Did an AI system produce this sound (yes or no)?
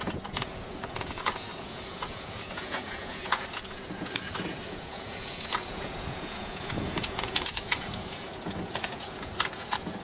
yes